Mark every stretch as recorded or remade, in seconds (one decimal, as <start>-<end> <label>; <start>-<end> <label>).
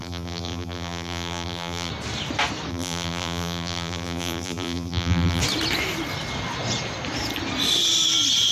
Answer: 0.0-1.9 remade; 1.9-2.7 recorded; 2.7-5.4 remade; 5.4-8.5 recorded